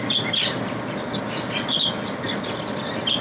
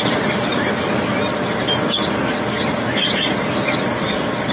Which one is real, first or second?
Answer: first